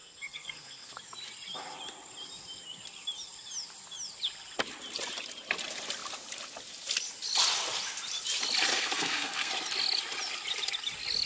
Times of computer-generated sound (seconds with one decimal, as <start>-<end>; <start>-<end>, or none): 0.0-1.0; 8.7-9.5